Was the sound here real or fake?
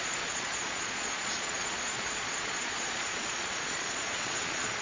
fake